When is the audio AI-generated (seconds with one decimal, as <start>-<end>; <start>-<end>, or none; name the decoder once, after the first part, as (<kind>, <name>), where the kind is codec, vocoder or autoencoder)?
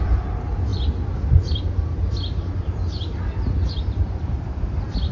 none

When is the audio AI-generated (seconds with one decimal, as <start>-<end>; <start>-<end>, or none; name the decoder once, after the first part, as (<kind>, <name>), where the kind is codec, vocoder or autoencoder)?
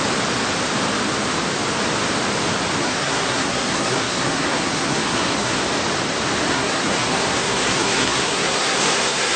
2.8-5.6 (codec, SNAC); 6.5-9.4